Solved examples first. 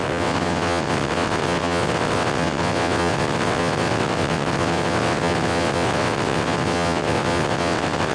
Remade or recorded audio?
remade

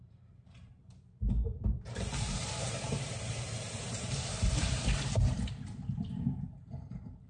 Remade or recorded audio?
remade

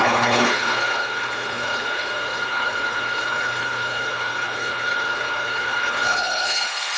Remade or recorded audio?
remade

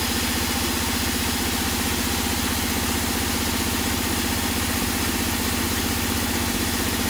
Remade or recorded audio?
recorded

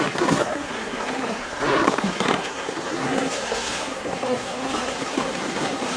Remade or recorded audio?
remade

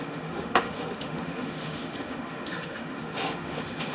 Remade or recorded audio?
remade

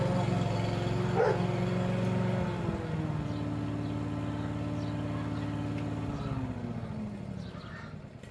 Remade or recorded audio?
recorded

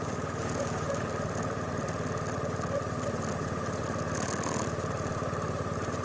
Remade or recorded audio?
recorded